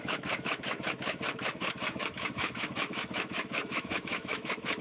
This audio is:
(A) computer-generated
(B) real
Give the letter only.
A